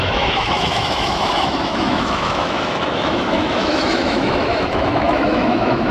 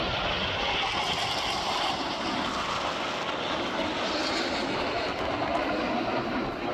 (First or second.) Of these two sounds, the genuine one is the second